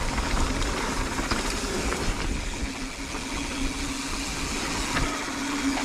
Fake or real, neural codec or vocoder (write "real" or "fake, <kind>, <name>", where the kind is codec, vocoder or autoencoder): real